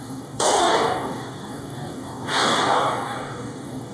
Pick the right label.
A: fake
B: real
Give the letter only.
A